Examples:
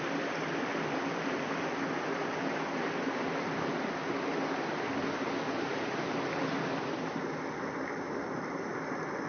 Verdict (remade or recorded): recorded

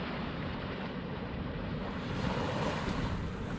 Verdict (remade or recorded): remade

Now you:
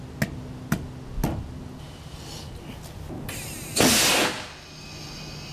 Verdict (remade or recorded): recorded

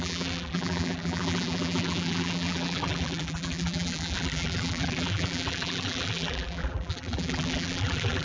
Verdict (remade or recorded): remade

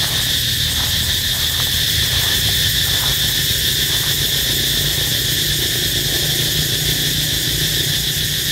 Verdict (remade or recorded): recorded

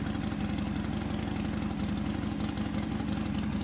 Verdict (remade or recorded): recorded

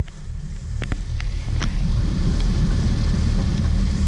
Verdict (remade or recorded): remade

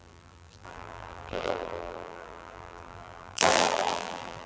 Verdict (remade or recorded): remade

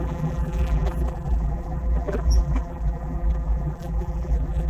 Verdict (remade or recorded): remade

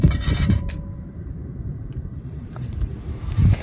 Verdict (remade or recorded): remade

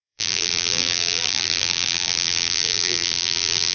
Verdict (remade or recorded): remade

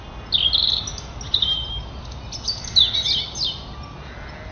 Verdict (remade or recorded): recorded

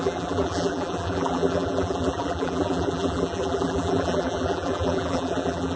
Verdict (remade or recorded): remade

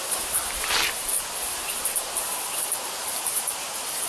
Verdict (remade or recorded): remade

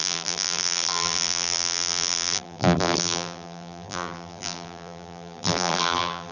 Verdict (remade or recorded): remade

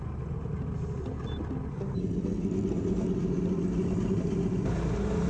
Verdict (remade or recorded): recorded